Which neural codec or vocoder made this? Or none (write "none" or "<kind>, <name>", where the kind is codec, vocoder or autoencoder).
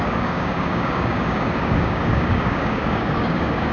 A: codec, DAC